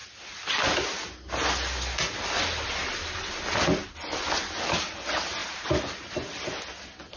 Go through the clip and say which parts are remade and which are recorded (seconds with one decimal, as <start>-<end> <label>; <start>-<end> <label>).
0.0-7.2 recorded